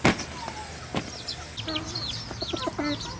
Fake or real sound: real